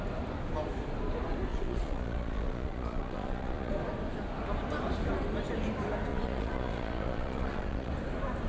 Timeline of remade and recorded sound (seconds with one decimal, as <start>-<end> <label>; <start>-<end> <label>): 0.0-1.5 recorded; 1.5-3.7 remade; 3.7-6.1 recorded; 6.1-7.9 remade; 7.9-8.5 recorded